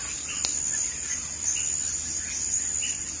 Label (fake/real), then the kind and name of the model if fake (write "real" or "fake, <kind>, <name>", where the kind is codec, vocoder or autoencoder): real